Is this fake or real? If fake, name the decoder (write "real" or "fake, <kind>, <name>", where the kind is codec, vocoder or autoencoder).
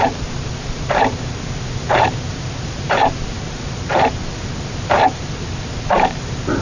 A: fake, vocoder, BigVGAN v2